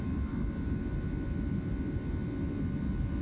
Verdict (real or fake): real